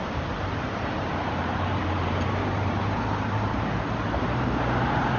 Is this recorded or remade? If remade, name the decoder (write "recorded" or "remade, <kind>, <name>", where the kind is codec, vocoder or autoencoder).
remade, vocoder, BigVGAN v2